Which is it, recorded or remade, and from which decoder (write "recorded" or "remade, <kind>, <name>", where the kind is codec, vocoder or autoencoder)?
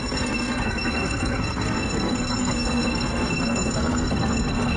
remade, codec, SNAC